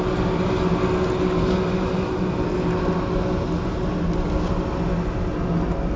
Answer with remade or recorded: recorded